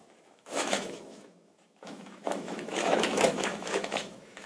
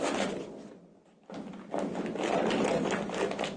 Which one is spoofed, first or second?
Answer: first